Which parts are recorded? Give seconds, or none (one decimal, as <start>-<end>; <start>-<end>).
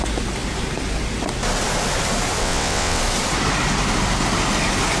0.0-2.4; 3.0-5.0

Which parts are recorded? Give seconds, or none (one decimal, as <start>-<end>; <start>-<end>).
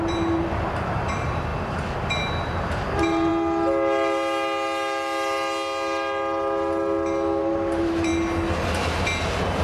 3.3-7.4; 8.1-9.2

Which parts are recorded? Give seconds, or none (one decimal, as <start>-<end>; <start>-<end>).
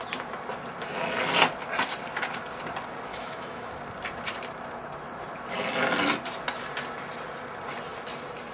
0.0-3.1; 3.7-8.5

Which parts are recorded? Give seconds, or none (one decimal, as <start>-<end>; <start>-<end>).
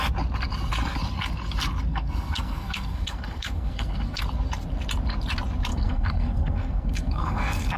0.0-1.9; 4.2-5.7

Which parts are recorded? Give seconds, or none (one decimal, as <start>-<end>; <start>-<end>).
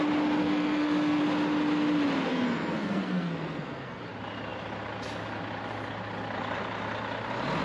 0.0-0.4; 1.2-2.3; 4.0-7.6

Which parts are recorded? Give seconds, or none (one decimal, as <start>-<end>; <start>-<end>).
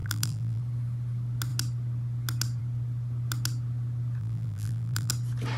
0.6-4.2; 5.1-5.6